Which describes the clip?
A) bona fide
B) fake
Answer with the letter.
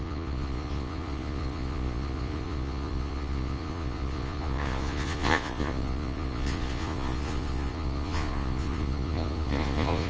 B